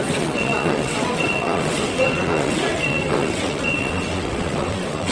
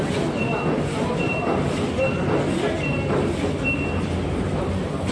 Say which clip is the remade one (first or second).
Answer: first